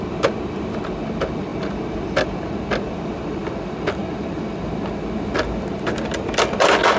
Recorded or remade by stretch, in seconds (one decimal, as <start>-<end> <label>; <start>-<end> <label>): 0.0-7.0 recorded